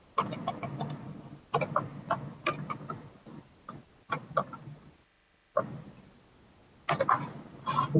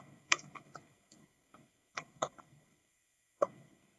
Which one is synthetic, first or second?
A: second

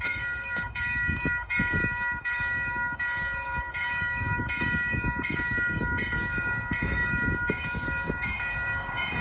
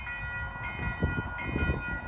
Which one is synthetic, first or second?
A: first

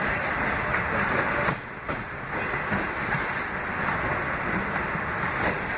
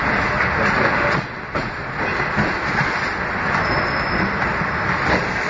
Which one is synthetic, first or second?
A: first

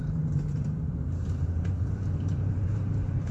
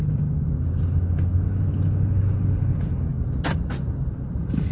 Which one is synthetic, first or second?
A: first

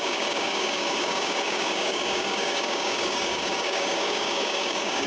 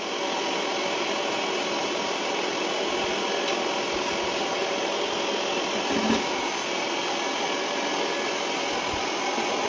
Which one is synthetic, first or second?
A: first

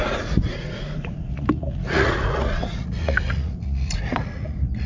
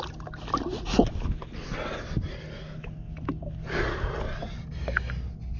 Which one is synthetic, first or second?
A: first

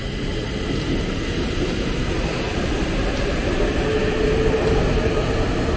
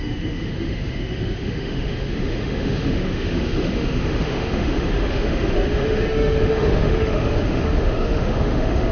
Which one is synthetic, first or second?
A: second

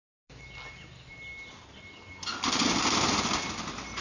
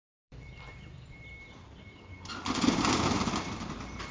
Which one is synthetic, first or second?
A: second